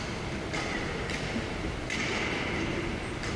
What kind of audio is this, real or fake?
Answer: real